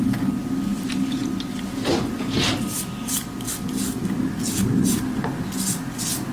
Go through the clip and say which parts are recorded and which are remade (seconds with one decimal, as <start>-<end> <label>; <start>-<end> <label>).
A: 0.0-6.3 recorded